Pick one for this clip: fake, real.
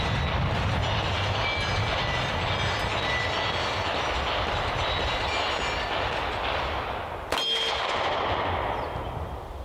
real